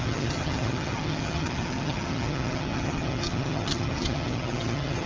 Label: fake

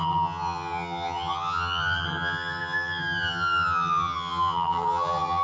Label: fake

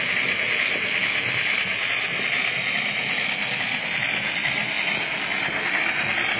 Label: real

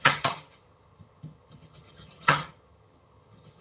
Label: fake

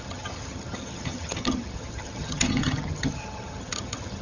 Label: fake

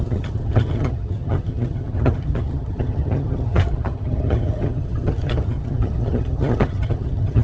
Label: fake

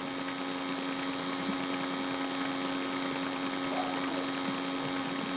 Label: real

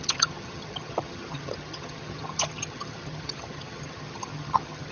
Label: fake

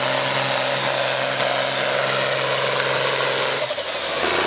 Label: real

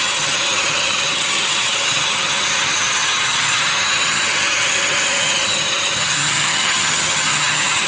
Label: fake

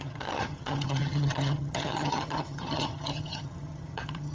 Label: fake